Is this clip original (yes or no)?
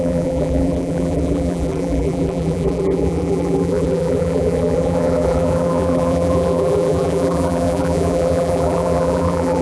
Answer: no